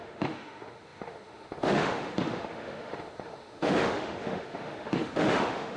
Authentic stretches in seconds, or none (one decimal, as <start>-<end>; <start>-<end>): none